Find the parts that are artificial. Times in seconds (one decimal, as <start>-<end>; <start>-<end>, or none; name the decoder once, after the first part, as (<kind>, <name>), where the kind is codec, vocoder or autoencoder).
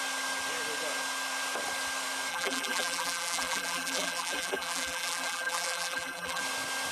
2.3-6.4 (vocoder, BigVGAN v2)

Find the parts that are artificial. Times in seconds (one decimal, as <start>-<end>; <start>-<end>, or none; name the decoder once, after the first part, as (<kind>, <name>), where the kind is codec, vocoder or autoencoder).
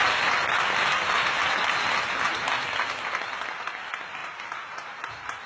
4.2-5.5 (vocoder, BigVGAN v2)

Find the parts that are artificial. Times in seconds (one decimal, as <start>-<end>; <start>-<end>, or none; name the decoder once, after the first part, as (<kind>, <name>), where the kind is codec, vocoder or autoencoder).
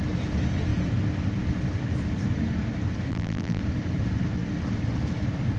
3.1-3.6 (vocoder, BigVGAN v2)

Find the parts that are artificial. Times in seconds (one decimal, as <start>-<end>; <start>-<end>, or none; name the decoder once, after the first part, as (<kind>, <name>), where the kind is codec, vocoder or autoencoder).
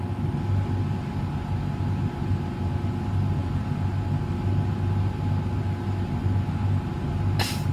none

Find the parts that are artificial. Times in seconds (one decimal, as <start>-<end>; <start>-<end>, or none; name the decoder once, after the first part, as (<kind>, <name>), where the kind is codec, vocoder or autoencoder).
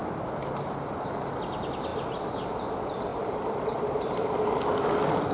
0.4-1.3 (vocoder, BigVGAN v2); 3.1-4.3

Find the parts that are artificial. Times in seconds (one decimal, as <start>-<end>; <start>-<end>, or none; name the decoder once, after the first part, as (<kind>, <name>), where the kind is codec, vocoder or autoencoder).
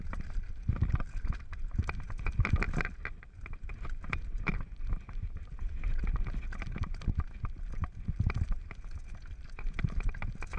none